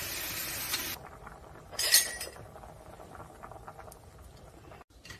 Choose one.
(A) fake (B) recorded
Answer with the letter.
B